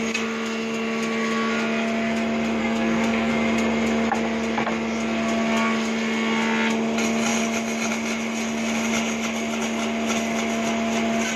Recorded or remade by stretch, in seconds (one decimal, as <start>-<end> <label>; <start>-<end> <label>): 0.0-2.6 recorded; 2.6-3.3 remade; 3.3-11.4 recorded